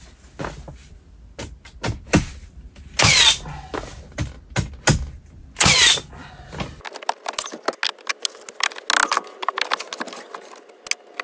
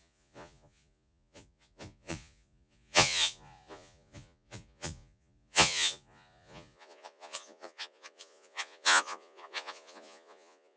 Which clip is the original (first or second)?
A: first